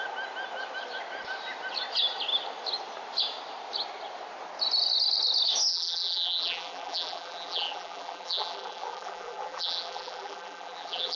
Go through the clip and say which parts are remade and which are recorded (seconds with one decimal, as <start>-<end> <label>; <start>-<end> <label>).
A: 0.0-5.7 recorded; 5.7-11.2 remade